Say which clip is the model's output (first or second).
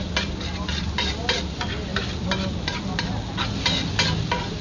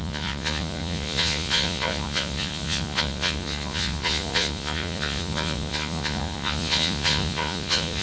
second